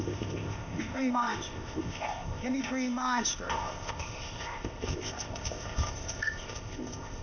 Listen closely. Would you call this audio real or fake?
fake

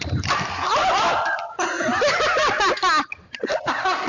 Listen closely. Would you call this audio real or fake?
real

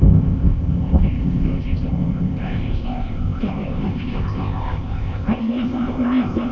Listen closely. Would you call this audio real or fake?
fake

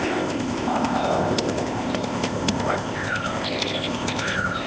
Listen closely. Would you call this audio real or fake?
fake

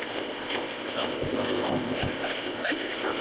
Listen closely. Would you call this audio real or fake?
fake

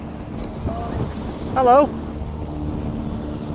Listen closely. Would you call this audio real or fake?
real